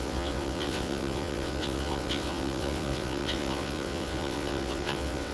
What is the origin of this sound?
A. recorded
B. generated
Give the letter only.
B